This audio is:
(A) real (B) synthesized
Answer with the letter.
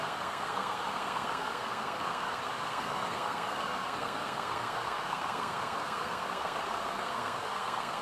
B